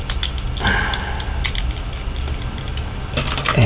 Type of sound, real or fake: real